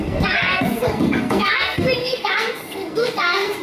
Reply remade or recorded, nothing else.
remade